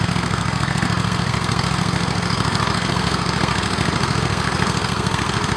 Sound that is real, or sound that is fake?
fake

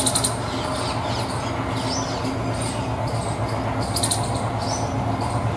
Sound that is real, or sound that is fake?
real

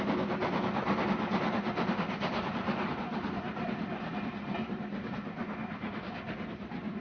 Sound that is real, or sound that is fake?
real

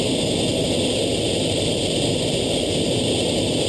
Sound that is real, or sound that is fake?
real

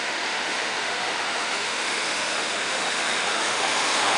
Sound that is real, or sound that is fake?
fake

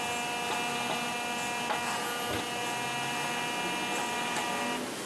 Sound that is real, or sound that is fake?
real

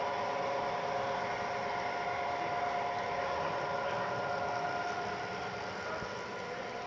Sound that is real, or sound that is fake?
real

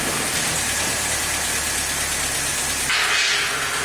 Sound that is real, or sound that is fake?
real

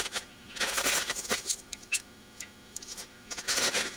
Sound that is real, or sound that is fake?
fake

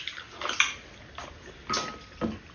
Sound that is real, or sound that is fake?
real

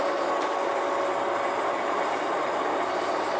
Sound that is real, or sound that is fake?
real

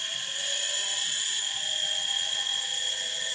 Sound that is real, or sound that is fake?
fake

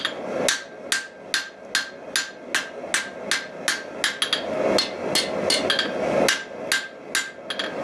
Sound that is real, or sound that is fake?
real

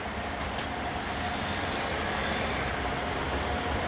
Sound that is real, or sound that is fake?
real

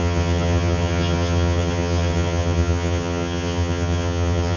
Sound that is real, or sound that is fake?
fake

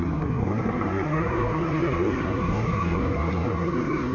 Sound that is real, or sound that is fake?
fake